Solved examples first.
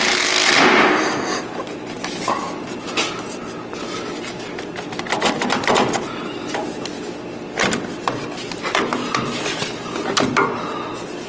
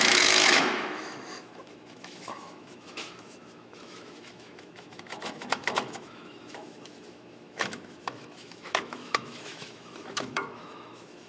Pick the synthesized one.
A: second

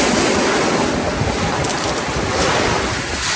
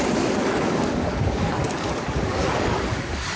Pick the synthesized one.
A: second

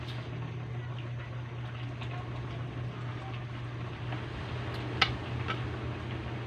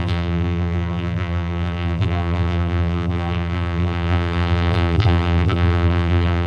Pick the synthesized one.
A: second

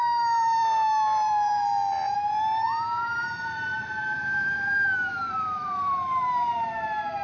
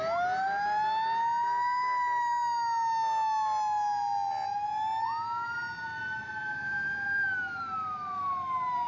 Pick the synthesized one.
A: first